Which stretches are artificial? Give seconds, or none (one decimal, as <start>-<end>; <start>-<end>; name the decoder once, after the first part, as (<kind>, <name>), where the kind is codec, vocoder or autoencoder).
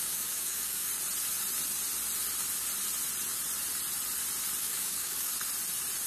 0.0-0.9 (codec, DAC); 4.6-5.3